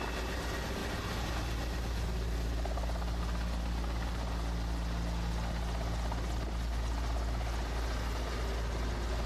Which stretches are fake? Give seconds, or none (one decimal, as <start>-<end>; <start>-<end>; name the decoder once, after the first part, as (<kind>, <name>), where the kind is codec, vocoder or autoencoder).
none